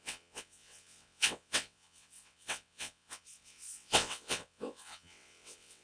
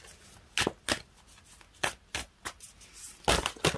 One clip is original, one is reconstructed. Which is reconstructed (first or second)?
first